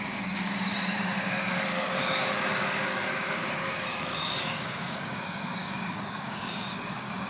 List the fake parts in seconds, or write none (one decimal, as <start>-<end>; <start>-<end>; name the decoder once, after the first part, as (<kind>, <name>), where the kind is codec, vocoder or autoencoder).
0.0-7.3 (codec, DAC)

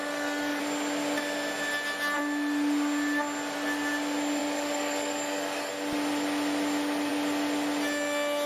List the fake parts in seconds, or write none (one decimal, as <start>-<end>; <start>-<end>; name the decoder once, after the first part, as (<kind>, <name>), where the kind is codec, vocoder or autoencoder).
0.0-0.6 (codec, DAC); 4.4-5.7

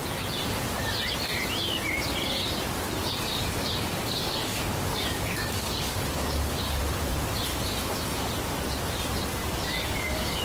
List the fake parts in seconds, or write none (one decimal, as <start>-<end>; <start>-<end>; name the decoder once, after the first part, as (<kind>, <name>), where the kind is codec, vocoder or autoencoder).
3.0-6.8 (codec, DAC); 9.4-10.4

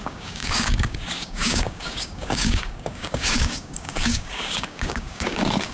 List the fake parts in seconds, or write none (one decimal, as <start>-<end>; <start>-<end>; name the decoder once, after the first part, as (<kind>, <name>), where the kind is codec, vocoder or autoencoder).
0.0-5.7 (codec, DAC)